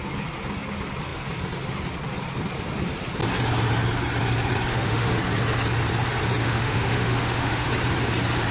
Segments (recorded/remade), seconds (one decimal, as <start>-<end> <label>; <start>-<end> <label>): 0.0-4.7 recorded; 4.7-5.2 remade; 5.2-6.4 recorded; 6.4-7.7 remade; 7.7-8.5 recorded